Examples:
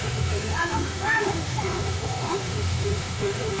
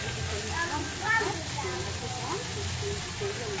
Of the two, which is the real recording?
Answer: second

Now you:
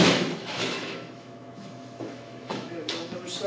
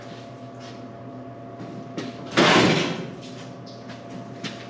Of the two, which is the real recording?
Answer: second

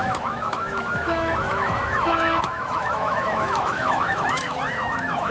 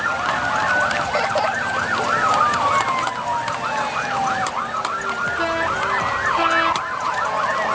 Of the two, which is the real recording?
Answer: second